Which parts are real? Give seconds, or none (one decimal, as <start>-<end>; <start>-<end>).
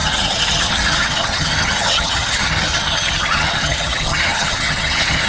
none